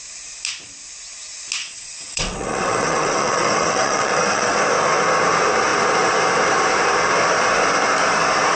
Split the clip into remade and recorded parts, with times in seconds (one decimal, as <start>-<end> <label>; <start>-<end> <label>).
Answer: 0.0-1.6 recorded; 1.6-4.6 remade; 4.6-8.6 recorded